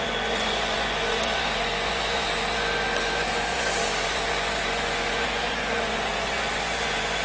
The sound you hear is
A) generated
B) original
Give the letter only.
A